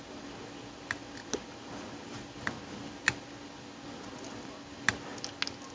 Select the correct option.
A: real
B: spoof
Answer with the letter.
A